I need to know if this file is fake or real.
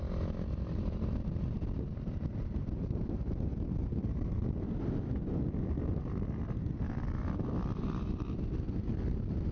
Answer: real